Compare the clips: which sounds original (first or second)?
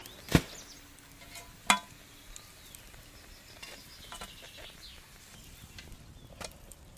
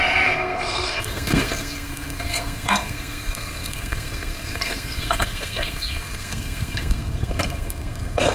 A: first